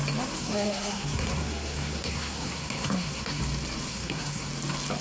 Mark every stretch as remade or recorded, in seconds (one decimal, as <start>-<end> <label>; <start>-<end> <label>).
0.0-0.4 recorded; 0.4-3.4 remade; 3.4-3.9 recorded; 3.9-4.5 remade; 4.5-5.0 recorded